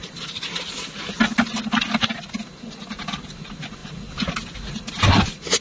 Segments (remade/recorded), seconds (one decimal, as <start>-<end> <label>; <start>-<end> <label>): 0.0-5.6 recorded